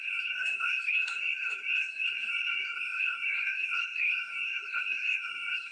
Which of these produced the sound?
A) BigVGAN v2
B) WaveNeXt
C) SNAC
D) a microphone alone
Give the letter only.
C